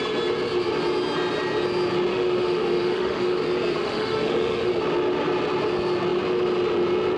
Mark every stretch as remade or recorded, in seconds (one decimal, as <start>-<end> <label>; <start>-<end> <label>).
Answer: 0.0-2.1 recorded; 2.1-3.4 remade; 3.4-3.8 recorded; 3.8-4.7 remade; 4.7-7.2 recorded